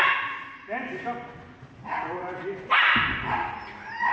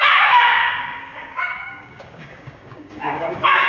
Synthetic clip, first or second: second